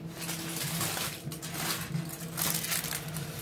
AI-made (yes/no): no